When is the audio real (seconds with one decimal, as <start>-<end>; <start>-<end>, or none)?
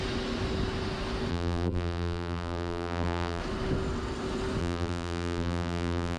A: 0.0-1.3; 3.4-4.6